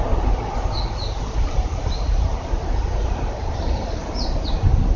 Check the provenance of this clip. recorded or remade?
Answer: recorded